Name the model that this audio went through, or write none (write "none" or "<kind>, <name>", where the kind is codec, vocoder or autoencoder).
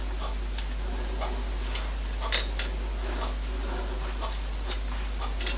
none